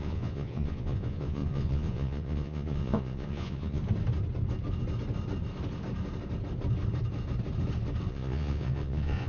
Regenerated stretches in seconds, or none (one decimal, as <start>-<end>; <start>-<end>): 0.0-3.8; 8.1-9.3